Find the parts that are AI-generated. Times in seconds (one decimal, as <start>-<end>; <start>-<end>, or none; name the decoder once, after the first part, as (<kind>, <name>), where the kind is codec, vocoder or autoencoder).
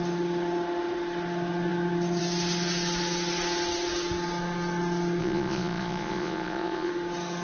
5.2-6.9 (vocoder, Vocos)